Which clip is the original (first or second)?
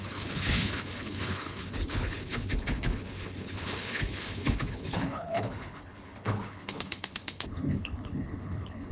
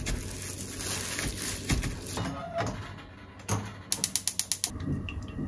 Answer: second